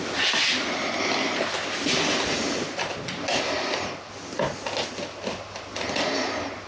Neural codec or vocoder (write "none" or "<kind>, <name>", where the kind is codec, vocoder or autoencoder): none